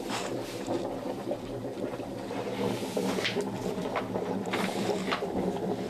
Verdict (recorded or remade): remade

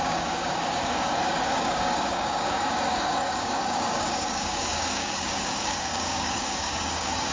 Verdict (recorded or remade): remade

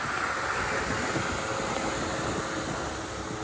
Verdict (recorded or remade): recorded